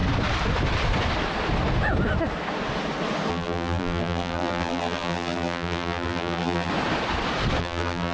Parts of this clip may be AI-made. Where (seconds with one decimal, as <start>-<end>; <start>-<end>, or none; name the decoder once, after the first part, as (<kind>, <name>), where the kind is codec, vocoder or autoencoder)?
3.3-6.7 (vocoder, BigVGAN v2); 7.6-8.1